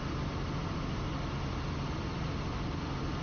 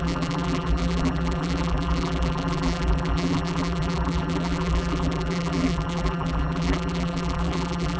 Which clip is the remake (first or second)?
second